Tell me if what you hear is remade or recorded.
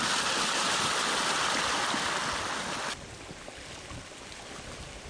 recorded